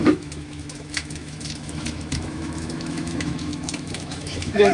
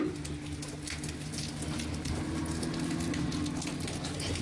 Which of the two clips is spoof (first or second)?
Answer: first